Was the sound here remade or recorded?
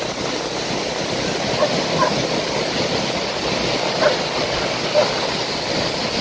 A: recorded